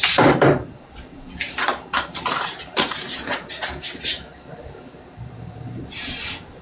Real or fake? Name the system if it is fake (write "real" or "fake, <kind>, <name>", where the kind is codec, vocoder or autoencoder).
fake, vocoder, BigVGAN v2